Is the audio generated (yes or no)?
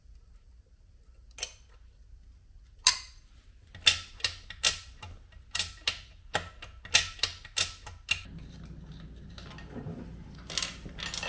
no